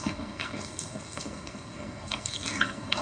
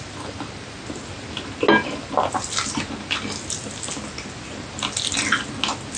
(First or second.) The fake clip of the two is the first